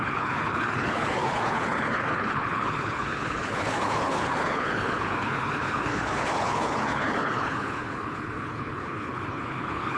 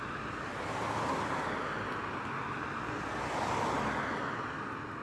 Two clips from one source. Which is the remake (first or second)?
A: first